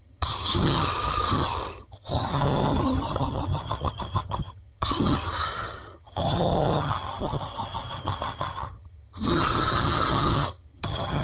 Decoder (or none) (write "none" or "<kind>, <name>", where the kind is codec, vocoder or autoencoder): vocoder, HiFi-GAN